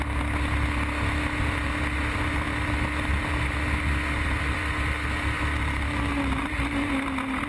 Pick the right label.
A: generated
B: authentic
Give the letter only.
B